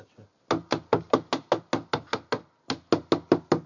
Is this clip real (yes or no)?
yes